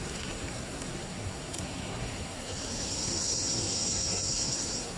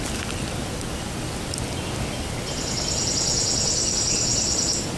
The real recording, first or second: second